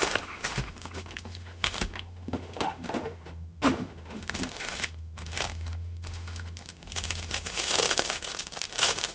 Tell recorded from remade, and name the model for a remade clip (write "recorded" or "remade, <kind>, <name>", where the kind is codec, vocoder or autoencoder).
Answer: remade, autoencoder, DAC-VAE